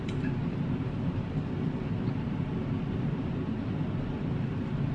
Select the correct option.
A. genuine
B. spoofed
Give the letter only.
B